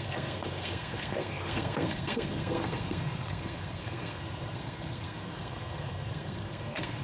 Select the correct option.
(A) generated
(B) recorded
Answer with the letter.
A